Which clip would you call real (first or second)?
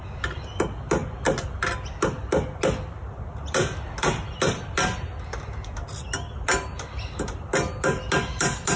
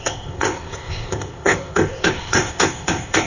first